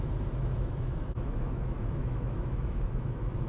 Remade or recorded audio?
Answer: remade